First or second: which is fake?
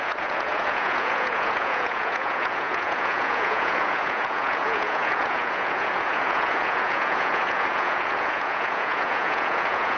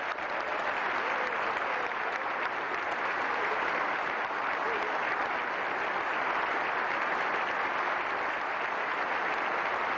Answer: first